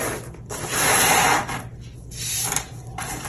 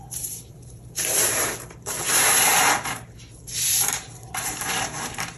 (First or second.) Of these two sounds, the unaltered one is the first